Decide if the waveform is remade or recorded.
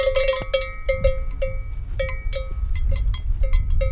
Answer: recorded